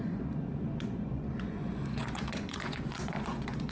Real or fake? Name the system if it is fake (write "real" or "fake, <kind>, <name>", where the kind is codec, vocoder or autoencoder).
fake, vocoder, Vocos